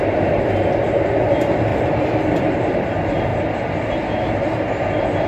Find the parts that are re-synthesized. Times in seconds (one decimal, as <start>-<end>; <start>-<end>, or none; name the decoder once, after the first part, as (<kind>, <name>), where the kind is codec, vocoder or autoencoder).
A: 1.7-2.4 (vocoder, BigVGAN v2)